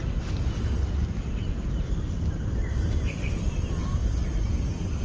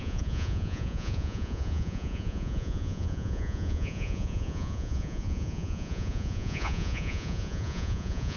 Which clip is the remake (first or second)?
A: second